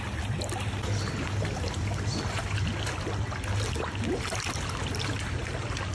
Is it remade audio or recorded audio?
recorded